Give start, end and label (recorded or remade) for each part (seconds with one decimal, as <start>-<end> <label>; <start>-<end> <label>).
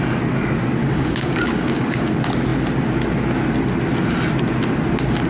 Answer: 0.0-0.8 recorded; 0.8-2.1 remade; 2.1-5.3 recorded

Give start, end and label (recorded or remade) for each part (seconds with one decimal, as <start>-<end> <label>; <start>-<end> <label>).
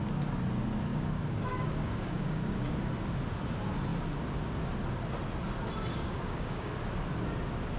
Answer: 0.0-0.9 recorded; 0.9-2.9 remade; 2.9-5.9 recorded; 5.9-6.7 remade; 6.7-7.8 recorded